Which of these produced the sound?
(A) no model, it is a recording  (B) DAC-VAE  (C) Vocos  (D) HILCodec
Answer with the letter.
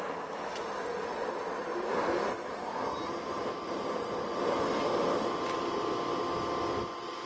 A